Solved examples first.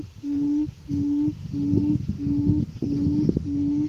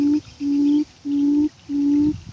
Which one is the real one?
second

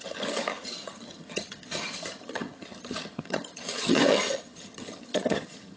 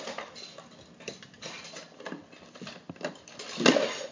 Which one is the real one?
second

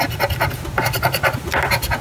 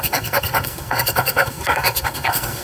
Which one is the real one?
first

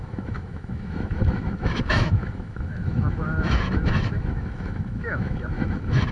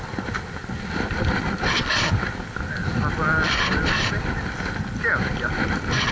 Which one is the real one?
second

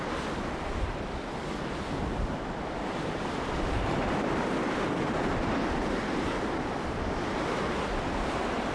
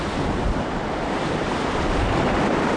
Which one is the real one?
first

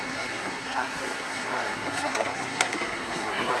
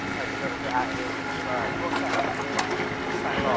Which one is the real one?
second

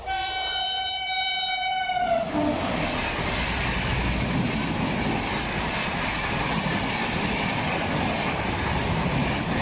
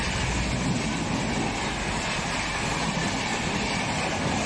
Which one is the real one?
second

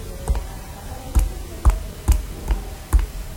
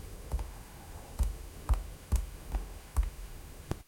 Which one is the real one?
first